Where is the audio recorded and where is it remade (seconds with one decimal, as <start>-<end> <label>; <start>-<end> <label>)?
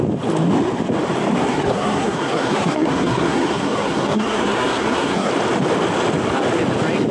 0.0-1.4 recorded; 1.4-5.3 remade; 5.3-7.1 recorded